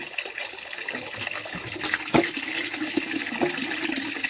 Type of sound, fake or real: real